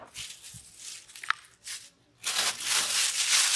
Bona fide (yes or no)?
yes